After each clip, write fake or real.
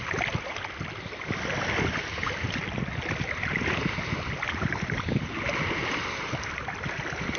real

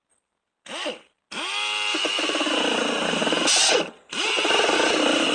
real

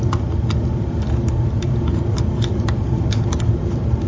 real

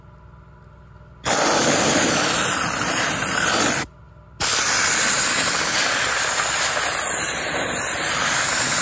real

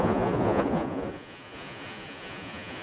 fake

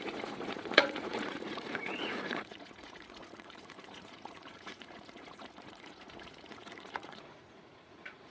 fake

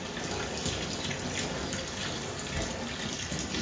real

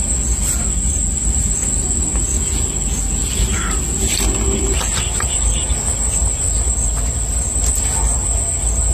real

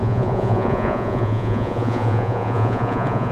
fake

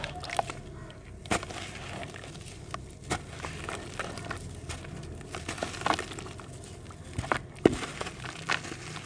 real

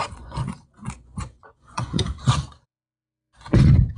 fake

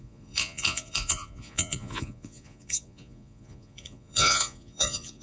fake